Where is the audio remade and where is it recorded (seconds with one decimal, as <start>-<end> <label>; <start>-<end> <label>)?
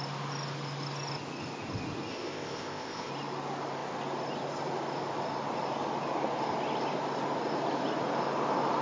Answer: 0.0-2.1 recorded; 2.1-3.1 remade; 3.1-8.8 recorded